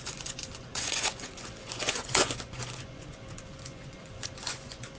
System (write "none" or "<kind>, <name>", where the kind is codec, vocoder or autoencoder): vocoder, Vocos